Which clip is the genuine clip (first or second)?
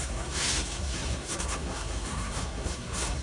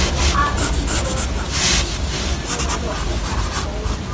second